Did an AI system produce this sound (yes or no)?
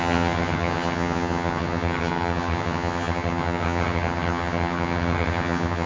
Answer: yes